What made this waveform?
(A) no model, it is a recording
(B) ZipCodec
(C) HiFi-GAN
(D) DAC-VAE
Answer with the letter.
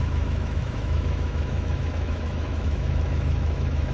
D